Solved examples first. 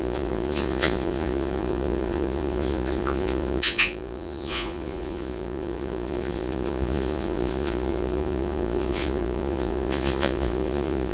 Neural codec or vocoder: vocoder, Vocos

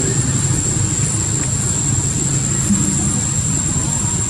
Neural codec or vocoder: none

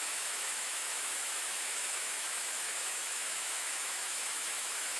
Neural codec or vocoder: autoencoder, DAC-VAE